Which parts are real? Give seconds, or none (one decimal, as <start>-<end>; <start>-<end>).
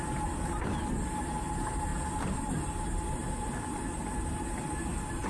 0.0-5.3